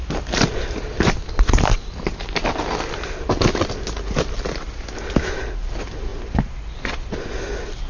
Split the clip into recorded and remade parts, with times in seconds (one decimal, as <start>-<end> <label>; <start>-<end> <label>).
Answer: 0.0-7.9 recorded